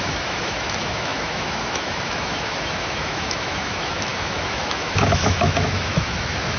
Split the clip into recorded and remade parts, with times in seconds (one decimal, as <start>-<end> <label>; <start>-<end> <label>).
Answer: 0.0-6.6 remade